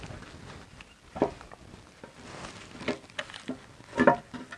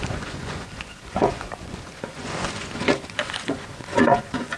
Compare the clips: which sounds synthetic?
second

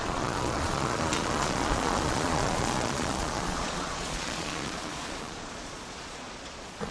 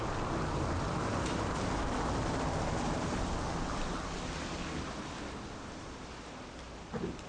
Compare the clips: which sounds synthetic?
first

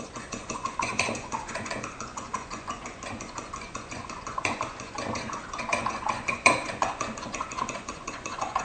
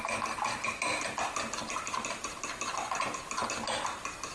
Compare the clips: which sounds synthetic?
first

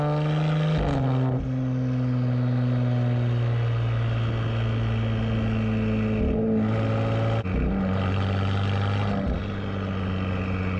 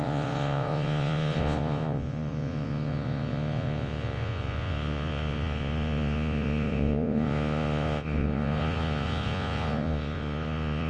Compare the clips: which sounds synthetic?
second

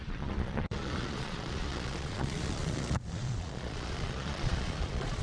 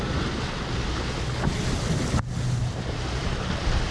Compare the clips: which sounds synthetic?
first